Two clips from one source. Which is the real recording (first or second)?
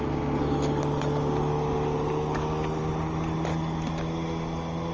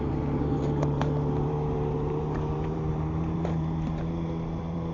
first